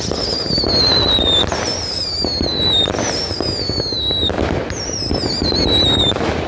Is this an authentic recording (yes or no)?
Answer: yes